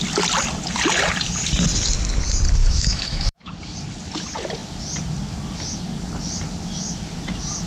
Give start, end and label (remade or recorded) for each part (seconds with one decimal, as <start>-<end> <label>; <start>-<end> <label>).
0.0-2.6 recorded; 2.6-3.5 remade; 3.5-7.7 recorded